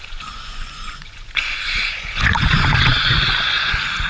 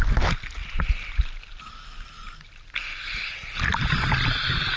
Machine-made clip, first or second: first